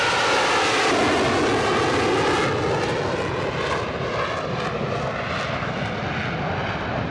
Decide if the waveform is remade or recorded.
recorded